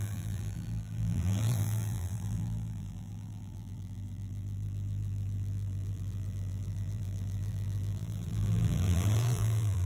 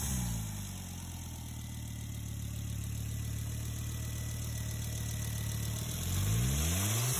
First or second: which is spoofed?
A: first